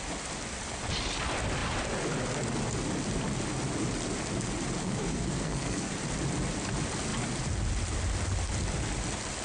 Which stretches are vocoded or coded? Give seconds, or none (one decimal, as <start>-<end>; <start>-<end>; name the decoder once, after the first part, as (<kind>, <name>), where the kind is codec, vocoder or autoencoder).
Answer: 4.8-5.9 (codec, SNAC)